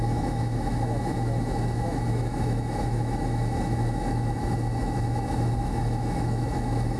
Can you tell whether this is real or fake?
fake